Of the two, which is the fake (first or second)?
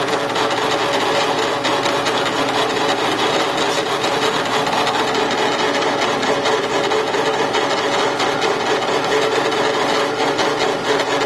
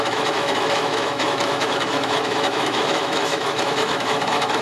second